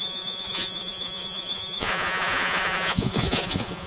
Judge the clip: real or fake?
fake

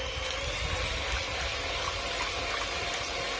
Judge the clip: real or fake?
real